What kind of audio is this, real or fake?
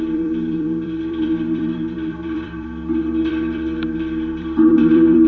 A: fake